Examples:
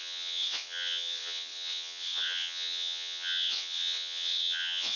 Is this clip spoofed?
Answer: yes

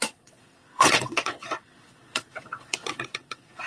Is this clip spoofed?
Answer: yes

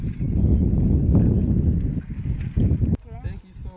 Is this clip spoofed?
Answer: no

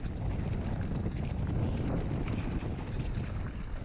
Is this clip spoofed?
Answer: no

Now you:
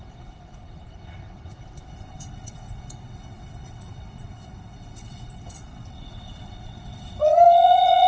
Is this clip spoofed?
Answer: yes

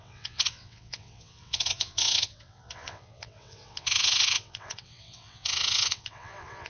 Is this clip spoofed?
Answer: yes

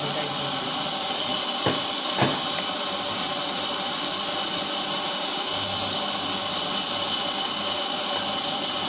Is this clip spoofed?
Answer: no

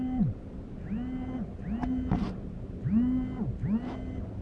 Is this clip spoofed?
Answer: no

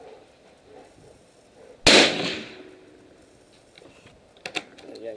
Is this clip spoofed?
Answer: no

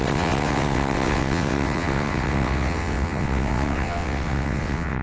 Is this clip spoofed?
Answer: yes